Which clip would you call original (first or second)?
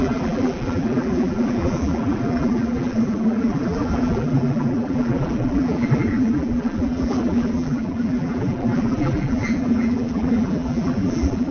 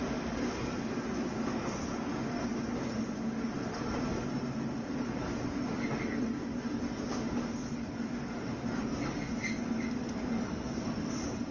second